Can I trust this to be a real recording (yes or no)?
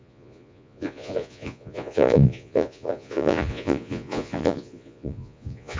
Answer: no